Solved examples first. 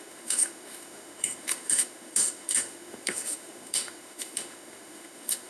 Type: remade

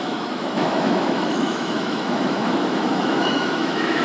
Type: remade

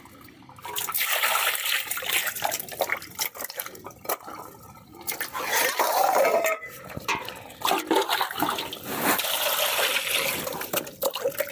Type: recorded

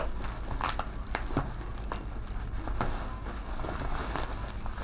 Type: recorded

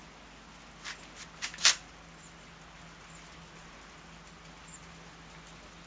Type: recorded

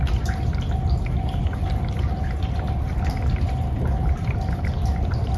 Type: recorded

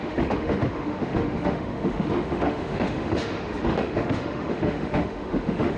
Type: remade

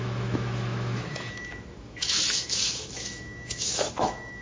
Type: remade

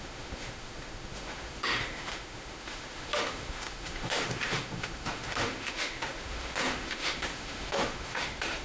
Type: remade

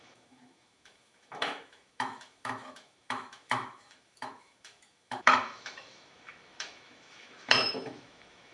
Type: remade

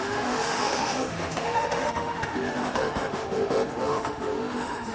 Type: remade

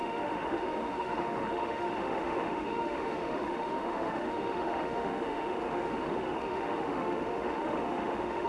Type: remade